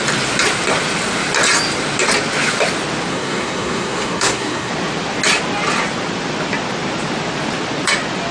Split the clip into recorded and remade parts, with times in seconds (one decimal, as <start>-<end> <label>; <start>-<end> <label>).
0.0-3.1 recorded; 3.1-4.7 remade; 4.7-8.3 recorded